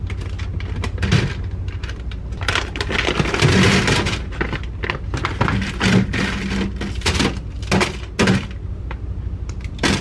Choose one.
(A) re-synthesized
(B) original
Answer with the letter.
B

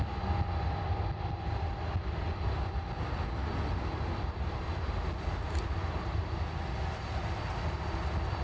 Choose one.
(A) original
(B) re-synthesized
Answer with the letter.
A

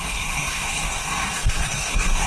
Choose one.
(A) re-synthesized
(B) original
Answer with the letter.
A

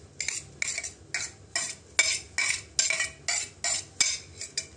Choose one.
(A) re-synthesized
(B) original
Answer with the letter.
B